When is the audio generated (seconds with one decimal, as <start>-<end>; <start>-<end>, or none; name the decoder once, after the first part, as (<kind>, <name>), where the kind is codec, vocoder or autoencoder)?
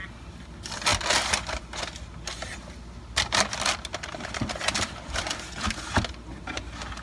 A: none